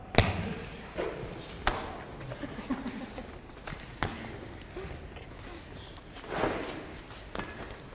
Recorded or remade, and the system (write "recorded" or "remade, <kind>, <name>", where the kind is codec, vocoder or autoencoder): recorded